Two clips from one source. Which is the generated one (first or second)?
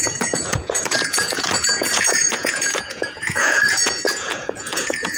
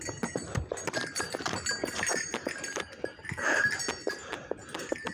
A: first